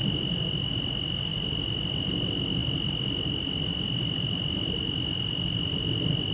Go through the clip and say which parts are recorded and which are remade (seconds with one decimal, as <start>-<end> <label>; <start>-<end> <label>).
0.0-6.3 recorded